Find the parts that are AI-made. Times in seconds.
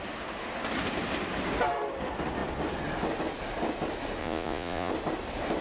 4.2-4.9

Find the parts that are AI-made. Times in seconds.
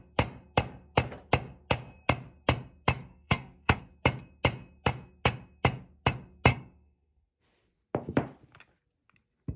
3.1-3.8; 6.5-7.4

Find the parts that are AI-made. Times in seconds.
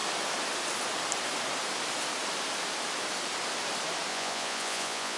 4.1-5.2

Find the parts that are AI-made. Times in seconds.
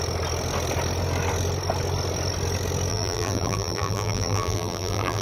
2.9-5.2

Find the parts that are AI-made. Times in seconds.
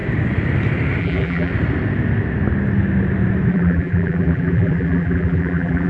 1.0-1.5; 3.5-5.9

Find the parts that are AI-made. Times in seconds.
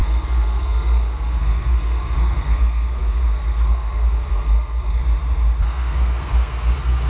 0.0-5.0; 5.6-7.1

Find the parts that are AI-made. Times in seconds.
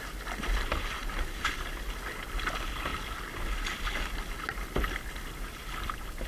1.0-1.6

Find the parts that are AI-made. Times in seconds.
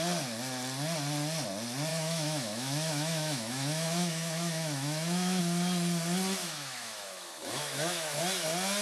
1.9-5.4; 6.4-8.2